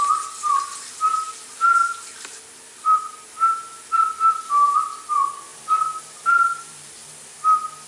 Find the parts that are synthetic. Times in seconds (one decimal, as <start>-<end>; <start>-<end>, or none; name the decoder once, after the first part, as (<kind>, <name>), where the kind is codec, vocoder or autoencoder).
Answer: 1.8-3.3 (vocoder, BigVGAN v2); 5.5-6.9

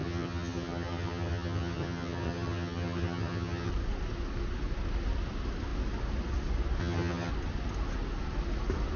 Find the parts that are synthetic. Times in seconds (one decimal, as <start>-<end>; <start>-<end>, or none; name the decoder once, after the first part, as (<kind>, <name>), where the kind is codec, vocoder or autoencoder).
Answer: 0.0-3.7 (vocoder, HiFi-GAN); 6.8-7.3

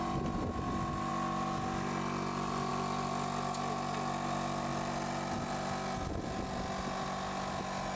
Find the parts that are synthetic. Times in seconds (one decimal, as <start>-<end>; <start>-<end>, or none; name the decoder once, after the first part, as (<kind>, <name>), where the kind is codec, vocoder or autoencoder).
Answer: none

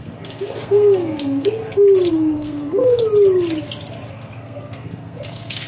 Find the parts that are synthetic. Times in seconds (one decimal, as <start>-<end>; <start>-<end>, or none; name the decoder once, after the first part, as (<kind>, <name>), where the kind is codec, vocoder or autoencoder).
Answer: 0.0-1.6 (codec, SNAC); 2.1-3.0; 4.1-5.7

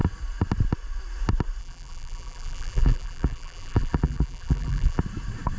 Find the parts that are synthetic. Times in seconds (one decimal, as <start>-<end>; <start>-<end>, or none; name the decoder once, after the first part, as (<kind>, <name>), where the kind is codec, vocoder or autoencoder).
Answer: 1.6-5.0 (vocoder, BigVGAN v2)

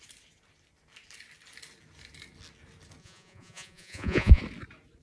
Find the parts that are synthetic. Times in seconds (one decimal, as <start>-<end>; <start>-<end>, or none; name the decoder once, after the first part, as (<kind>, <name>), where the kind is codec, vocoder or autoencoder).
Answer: 3.0-4.4 (vocoder, Vocos)

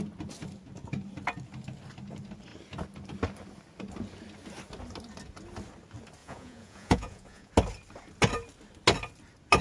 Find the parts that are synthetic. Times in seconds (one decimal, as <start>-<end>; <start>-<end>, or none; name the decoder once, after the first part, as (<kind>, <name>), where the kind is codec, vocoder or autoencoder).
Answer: 6.2-7.5 (vocoder, Vocos)

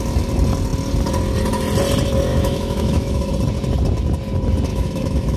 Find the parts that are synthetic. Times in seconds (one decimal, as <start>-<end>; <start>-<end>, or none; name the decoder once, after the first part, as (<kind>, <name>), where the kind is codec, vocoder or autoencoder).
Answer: 2.3-3.3 (autoencoder, DAC-VAE); 4.7-5.4